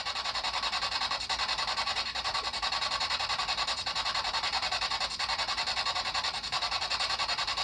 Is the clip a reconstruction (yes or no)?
yes